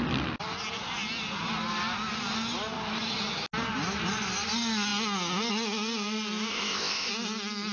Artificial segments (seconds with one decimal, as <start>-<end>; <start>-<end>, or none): 6.5-7.1